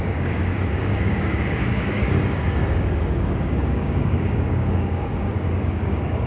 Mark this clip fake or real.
fake